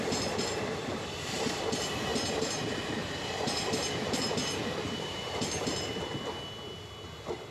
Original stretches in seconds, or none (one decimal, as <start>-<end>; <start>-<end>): 5.7-7.5